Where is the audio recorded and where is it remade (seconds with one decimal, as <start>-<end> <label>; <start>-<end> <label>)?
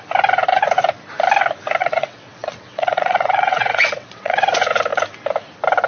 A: 0.0-1.8 recorded; 1.8-4.5 remade; 4.5-5.9 recorded